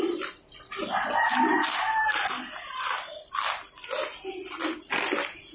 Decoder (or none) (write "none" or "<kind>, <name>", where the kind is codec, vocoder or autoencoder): none